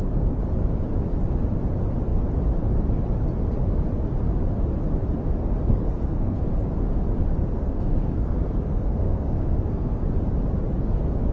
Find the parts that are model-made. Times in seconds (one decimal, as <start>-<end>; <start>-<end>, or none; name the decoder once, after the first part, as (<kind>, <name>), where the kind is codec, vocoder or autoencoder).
5.7-6.4 (codec, SNAC); 7.5-10.0